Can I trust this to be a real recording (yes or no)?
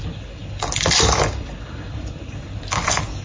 no